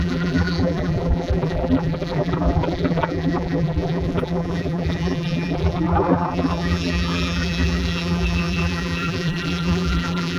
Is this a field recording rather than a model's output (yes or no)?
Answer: no